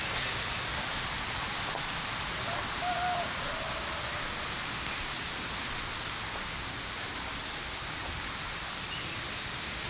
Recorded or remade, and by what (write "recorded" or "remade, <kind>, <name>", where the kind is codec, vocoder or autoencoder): recorded